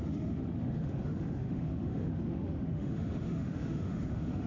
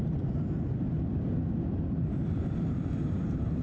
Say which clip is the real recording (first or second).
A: second